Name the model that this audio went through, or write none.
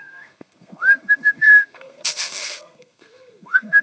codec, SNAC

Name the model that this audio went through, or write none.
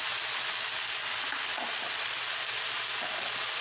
none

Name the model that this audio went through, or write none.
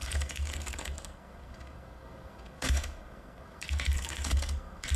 codec, SNAC